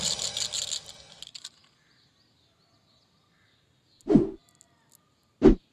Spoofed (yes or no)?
no